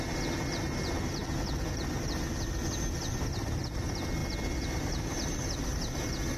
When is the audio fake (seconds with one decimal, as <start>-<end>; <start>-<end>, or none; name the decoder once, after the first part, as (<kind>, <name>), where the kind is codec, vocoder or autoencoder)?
none